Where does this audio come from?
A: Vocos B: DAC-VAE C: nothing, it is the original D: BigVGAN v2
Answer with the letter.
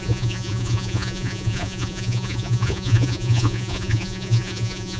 A